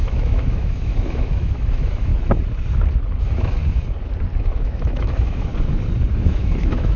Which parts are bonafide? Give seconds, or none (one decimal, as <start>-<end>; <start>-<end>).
2.1-3.2; 3.6-4.4; 5.5-6.1